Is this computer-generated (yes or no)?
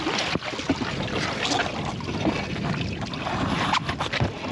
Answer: no